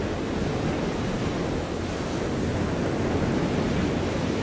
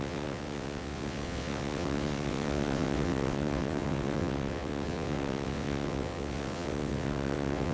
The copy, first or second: second